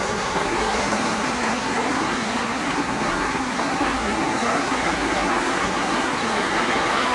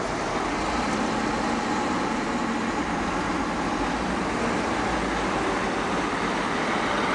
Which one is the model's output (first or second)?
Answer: first